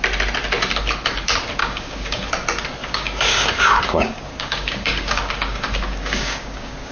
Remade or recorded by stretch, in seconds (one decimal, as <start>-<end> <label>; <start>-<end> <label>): 0.0-1.6 recorded; 1.6-2.3 remade; 2.3-2.8 recorded; 2.8-6.9 remade